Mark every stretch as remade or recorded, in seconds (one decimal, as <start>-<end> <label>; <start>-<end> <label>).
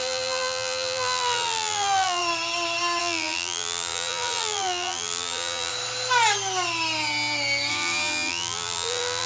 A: 0.0-2.2 remade; 2.2-3.0 recorded; 3.0-5.7 remade; 5.7-7.7 recorded; 7.7-9.3 remade